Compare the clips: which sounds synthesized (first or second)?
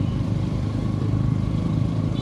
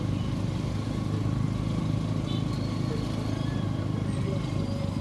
first